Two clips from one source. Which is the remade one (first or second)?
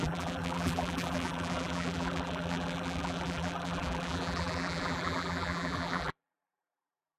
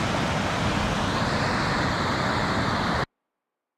first